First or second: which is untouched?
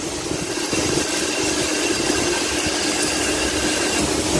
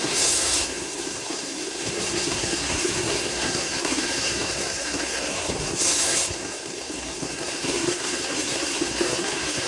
first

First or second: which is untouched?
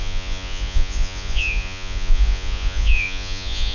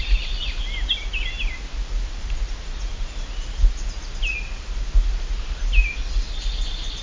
second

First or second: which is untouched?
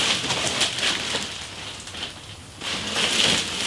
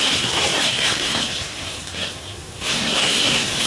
first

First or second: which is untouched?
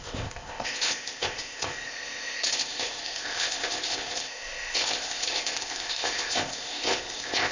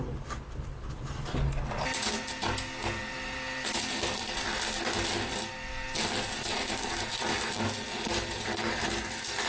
second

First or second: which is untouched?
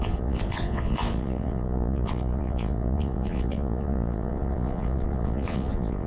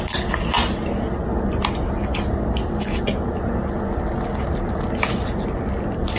second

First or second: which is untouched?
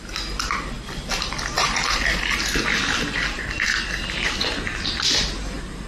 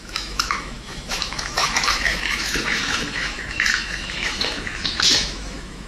first